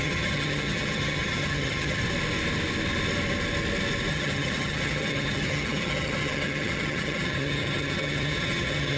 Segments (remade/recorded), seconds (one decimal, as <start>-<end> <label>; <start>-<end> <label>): 0.0-2.0 remade; 2.0-4.1 recorded; 4.1-9.0 remade